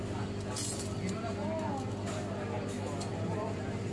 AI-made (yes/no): no